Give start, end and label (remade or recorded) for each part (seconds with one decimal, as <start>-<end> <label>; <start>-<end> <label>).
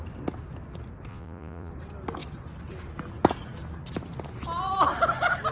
0.0-1.1 recorded; 1.1-1.7 remade; 1.7-5.5 recorded